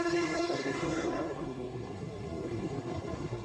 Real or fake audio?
fake